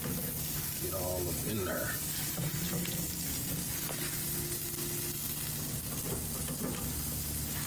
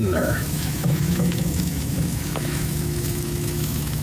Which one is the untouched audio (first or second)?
first